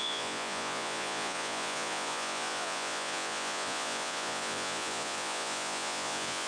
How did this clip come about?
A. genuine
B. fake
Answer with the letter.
B